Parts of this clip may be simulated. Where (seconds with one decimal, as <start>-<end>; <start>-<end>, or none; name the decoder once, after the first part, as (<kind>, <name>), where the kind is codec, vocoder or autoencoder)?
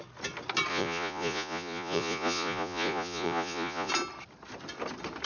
0.7-3.9 (vocoder, Vocos)